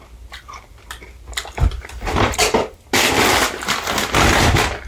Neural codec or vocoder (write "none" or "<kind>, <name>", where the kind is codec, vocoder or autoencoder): none